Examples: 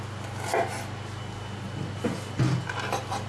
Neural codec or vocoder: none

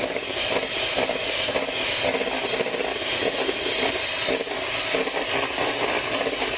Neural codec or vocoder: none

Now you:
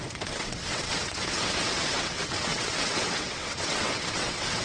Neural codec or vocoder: vocoder, WaveNeXt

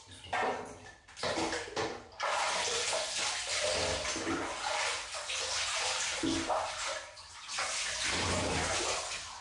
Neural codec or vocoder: none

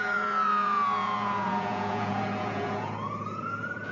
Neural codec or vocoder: vocoder, Vocos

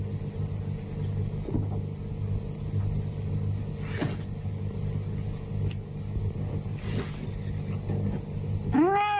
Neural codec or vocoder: none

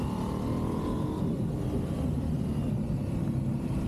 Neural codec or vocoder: none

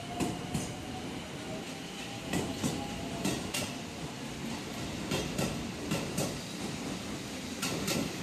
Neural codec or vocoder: none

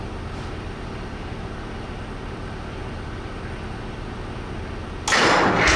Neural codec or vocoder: none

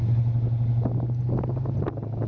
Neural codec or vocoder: none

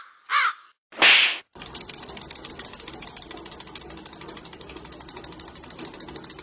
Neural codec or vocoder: none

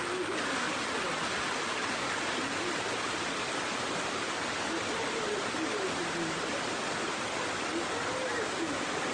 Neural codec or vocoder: none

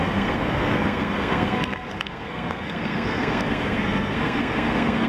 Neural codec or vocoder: codec, SNAC